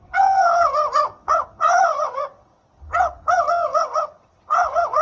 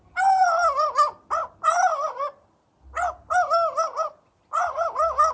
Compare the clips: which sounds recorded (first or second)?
second